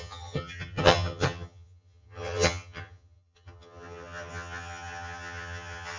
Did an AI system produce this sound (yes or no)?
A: yes